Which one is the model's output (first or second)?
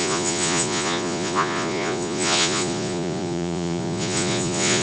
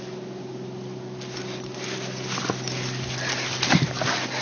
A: first